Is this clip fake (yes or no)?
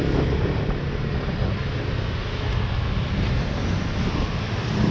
no